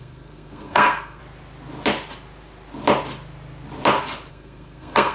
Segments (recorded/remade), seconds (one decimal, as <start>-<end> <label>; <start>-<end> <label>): 0.0-1.2 remade; 1.2-4.3 recorded; 4.3-5.1 remade